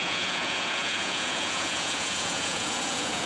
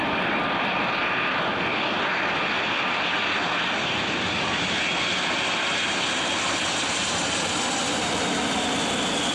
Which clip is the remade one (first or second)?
first